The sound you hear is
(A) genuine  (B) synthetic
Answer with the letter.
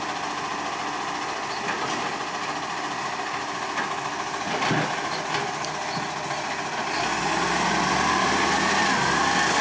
A